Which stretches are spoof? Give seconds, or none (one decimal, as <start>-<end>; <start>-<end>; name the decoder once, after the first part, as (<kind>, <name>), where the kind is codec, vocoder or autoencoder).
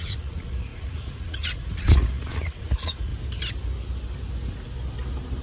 0.0-3.1 (vocoder, Vocos)